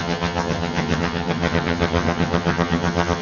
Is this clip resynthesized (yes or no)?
yes